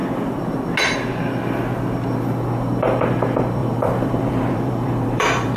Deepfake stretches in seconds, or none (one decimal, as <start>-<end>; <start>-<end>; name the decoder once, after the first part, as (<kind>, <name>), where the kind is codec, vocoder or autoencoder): 3.6-5.6 (vocoder, BigVGAN v2)